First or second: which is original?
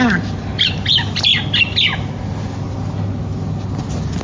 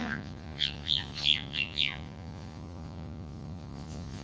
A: first